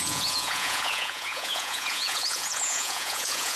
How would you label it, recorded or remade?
remade